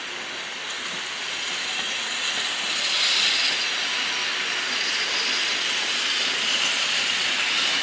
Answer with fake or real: real